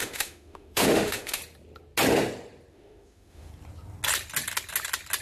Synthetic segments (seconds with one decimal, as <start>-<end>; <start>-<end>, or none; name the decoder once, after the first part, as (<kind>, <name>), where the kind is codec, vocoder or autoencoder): 0.0-1.4 (autoencoder, DAC-VAE); 2.7-3.5